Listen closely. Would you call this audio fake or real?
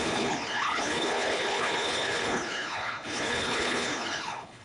fake